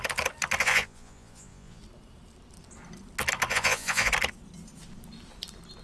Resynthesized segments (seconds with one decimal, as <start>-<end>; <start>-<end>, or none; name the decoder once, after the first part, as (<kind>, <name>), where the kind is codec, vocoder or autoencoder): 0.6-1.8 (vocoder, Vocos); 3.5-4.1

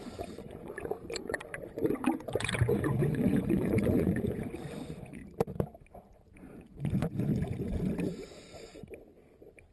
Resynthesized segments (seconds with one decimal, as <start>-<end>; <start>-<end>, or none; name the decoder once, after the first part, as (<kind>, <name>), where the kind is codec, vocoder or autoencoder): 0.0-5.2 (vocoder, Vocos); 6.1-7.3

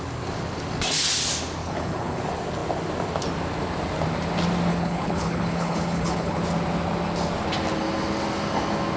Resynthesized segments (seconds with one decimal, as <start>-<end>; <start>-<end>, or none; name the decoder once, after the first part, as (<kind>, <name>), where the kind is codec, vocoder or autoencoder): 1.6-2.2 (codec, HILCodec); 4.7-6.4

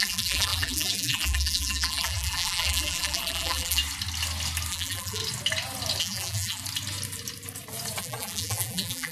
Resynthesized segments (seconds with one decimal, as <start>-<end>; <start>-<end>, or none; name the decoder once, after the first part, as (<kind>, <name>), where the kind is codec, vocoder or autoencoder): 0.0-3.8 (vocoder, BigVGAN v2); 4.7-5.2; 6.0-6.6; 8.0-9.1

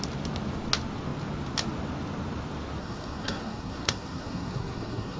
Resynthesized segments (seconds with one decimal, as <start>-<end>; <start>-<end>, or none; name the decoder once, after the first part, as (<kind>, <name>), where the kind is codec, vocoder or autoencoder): 2.8-5.2 (codec, SNAC)

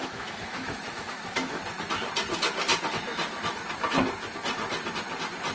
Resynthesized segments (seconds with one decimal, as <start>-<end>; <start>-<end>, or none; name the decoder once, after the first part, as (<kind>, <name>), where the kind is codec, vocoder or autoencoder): 0.0-1.6 (autoencoder, DAC-VAE)

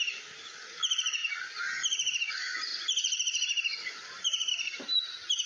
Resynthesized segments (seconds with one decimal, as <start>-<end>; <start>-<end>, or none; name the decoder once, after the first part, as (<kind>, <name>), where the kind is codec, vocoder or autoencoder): 0.0-1.2 (vocoder, BigVGAN v2); 2.3-5.5